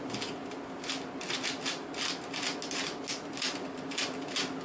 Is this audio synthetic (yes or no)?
no